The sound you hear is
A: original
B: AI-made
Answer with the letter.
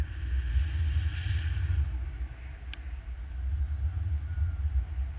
A